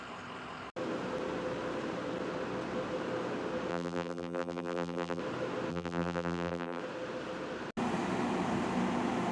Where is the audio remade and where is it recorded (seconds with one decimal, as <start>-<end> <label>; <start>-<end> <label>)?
0.0-3.7 recorded; 3.7-5.2 remade; 5.2-5.7 recorded; 5.7-6.8 remade; 6.8-9.3 recorded